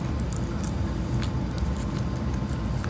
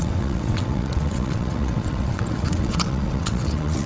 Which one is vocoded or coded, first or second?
second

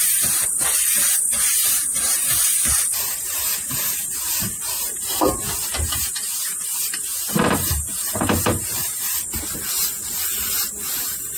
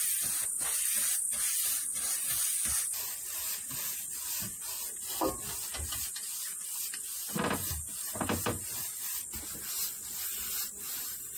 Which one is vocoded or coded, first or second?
first